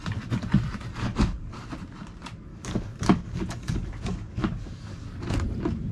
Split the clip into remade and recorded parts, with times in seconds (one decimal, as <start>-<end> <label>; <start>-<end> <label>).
0.0-0.9 recorded; 0.9-1.7 remade; 1.7-2.5 recorded; 2.5-5.1 remade; 5.1-5.9 recorded